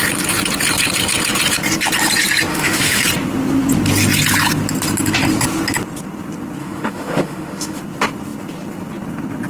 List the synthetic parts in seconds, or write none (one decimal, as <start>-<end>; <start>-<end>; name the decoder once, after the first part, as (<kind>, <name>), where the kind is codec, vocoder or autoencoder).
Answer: 2.5-3.0 (autoencoder, DAC-VAE); 6.6-7.8